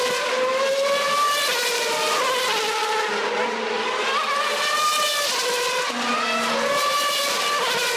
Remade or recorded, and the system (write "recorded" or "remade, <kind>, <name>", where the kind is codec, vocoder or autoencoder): recorded